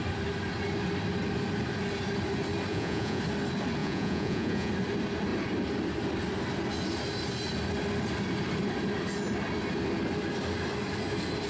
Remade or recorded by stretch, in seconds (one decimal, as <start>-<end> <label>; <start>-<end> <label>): 0.0-2.7 recorded; 2.7-3.2 remade; 3.2-3.8 recorded; 3.8-4.7 remade; 4.7-11.5 recorded